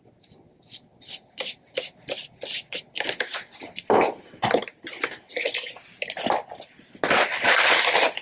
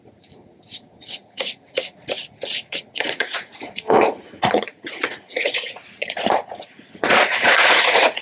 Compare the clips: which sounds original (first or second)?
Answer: first